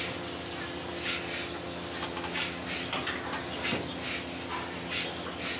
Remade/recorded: recorded